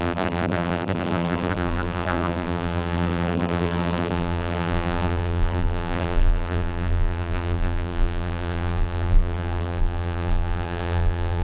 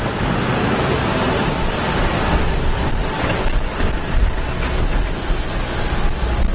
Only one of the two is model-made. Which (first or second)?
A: first